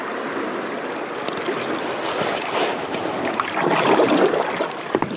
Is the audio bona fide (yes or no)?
yes